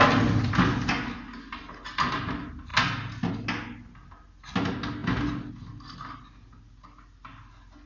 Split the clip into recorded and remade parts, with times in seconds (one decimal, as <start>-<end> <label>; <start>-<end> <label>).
0.0-7.9 recorded